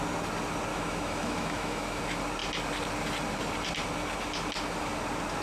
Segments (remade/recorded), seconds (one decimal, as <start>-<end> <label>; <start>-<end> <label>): 0.0-0.7 recorded; 0.7-2.0 remade; 2.0-5.4 recorded